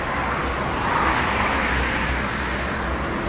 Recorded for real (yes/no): yes